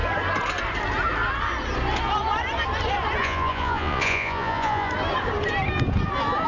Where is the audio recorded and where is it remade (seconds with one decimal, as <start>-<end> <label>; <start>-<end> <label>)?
0.0-3.2 recorded; 3.2-4.9 remade; 4.9-6.5 recorded